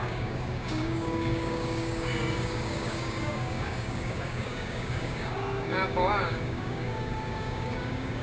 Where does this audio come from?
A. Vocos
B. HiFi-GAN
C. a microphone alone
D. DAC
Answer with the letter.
D